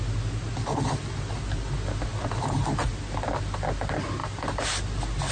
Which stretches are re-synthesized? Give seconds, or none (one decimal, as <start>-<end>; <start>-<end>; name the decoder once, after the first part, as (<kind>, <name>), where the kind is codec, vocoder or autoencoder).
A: none